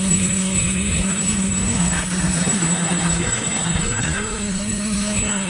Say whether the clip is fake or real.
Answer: fake